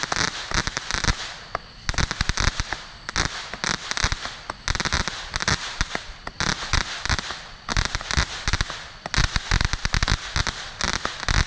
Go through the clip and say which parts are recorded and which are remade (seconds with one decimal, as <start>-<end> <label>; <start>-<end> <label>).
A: 0.0-11.5 recorded